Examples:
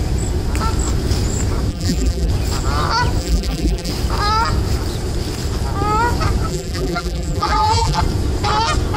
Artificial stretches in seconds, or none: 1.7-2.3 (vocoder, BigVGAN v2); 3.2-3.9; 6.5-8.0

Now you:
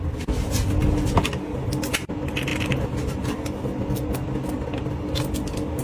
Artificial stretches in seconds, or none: none

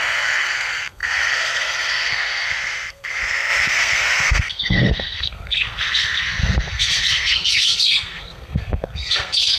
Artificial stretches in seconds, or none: 0.0-9.6 (codec, SNAC)

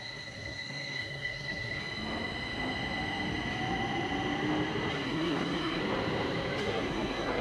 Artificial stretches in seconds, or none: 0.0-1.8 (codec, SNAC); 4.9-5.8; 6.6-7.4

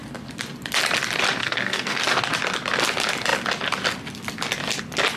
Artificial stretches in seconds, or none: 1.4-2.0 (codec, SNAC)

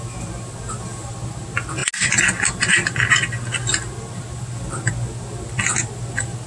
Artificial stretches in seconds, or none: none